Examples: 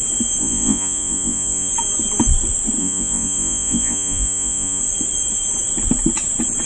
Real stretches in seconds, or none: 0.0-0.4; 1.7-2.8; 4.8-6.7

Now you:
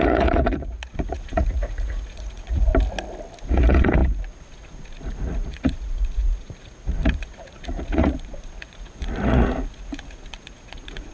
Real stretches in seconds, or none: 2.7-3.4

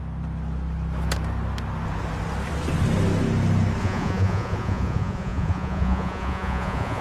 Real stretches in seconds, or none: 0.0-3.8

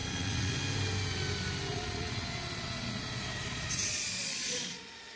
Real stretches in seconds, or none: 0.6-1.7; 4.8-5.2

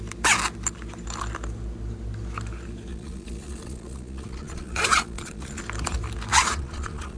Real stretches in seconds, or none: 0.0-2.9; 5.6-6.3

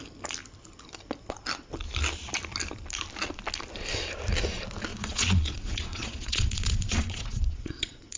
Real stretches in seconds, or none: 0.0-4.9

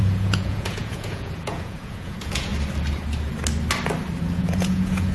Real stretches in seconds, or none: 2.5-4.2

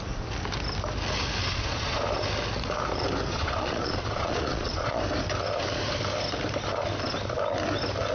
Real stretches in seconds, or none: 0.0-1.4; 2.0-3.3; 5.0-8.1